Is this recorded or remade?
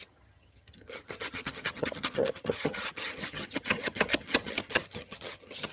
remade